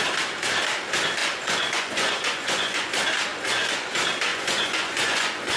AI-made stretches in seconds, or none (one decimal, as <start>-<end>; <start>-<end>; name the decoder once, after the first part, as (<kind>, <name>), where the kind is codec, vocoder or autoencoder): 1.2-2.9 (vocoder, Vocos); 3.3-3.9; 4.3-5.6